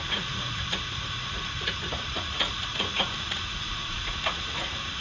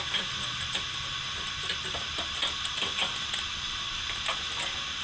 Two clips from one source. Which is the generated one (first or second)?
first